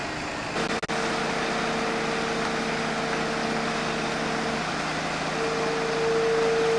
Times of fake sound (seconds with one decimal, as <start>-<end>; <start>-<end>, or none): none